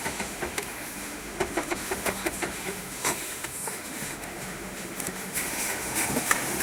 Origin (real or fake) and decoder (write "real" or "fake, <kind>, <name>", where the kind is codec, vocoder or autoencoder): fake, autoencoder, DAC-VAE